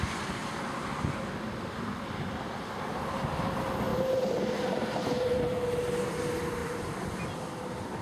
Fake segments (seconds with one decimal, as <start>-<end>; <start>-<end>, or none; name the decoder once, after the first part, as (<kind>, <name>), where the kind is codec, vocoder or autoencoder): 3.9-5.6 (vocoder, BigVGAN v2); 6.6-7.2